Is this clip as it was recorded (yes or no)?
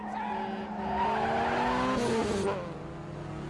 yes